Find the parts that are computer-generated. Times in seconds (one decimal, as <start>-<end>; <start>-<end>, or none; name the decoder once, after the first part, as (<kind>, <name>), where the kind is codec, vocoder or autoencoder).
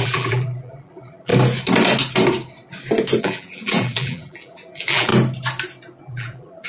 0.0-1.3 (vocoder, BigVGAN v2); 3.2-5.1; 6.0-6.7